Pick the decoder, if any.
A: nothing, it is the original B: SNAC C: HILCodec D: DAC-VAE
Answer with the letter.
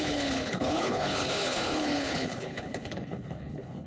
C